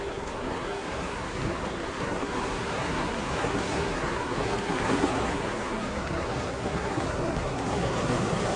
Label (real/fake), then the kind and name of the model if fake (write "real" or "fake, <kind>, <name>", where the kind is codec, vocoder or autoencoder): fake, codec, SNAC